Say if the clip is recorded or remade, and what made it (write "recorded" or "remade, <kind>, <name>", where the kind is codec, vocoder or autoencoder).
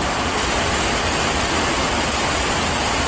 recorded